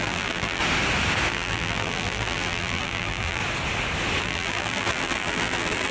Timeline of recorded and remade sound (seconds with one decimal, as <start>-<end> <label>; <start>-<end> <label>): 0.0-0.6 remade; 0.6-1.3 recorded; 1.3-3.4 remade; 3.4-4.2 recorded; 4.2-5.9 remade